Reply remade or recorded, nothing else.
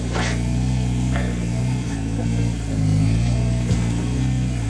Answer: remade